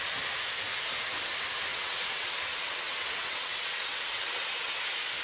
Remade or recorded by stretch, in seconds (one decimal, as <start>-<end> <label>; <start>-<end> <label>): 0.0-1.7 recorded; 1.7-4.8 remade; 4.8-5.2 recorded